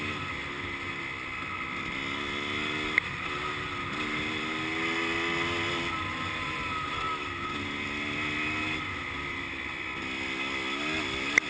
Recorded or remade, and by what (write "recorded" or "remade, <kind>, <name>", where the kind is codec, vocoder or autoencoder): recorded